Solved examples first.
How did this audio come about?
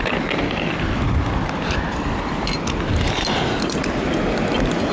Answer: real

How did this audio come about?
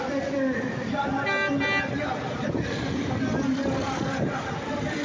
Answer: real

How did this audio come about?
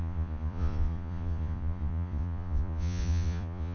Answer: fake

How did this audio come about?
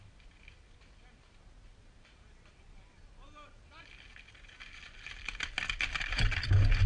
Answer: real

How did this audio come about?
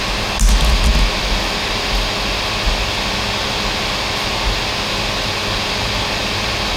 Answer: real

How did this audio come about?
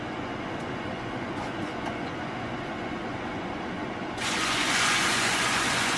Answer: fake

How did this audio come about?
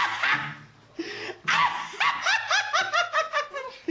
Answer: real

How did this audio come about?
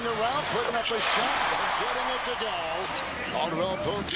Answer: real